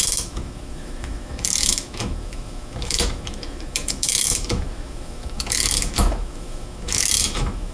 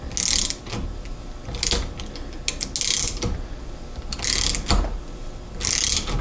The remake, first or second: first